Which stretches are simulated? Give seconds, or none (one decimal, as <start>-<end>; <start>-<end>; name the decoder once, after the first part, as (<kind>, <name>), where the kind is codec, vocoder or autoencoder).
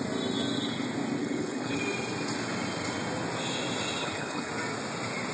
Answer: 1.2-1.8 (codec, HILCodec); 4.0-4.5